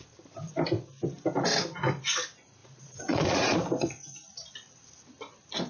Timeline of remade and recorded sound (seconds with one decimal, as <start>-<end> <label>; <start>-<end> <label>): 0.0-2.6 recorded; 2.6-3.4 remade; 3.4-5.7 recorded